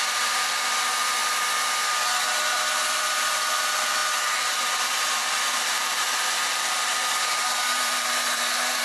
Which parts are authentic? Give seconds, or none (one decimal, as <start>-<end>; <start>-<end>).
1.2-2.6

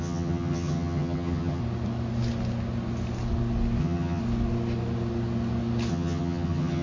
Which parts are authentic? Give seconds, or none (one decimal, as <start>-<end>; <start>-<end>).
1.6-3.8; 4.2-5.9

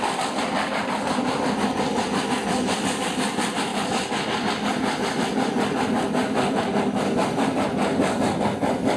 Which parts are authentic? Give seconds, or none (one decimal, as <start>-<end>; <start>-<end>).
0.0-3.7

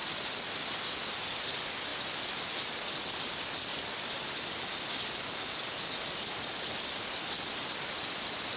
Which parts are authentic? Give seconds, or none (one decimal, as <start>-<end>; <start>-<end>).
0.9-8.6